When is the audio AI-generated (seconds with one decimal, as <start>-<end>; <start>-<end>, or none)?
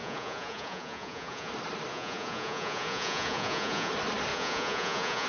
0.0-1.5; 1.9-3.9; 4.3-5.3